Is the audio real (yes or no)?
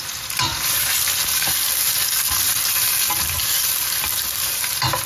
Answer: yes